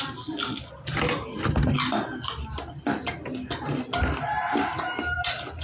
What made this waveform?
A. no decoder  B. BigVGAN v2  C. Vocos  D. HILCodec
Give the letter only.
A